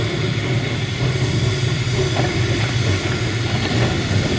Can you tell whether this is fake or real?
real